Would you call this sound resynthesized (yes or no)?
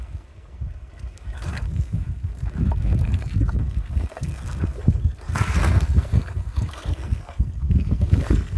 yes